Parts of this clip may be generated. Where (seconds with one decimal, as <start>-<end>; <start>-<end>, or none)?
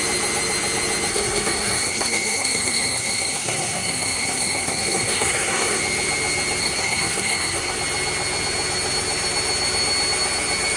1.1-5.8; 6.6-7.8